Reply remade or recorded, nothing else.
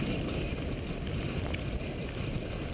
recorded